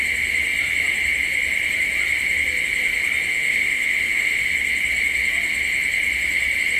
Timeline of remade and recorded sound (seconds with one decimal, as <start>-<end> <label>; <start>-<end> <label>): 0.0-3.3 recorded; 3.3-4.5 remade; 4.5-6.8 recorded